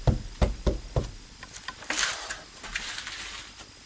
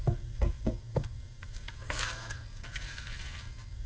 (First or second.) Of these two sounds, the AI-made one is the second